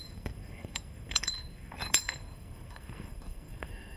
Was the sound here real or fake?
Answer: fake